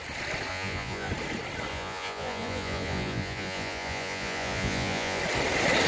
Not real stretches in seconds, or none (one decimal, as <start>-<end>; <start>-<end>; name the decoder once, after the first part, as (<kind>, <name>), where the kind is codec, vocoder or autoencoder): 0.5-1.1 (vocoder, Vocos); 1.7-5.2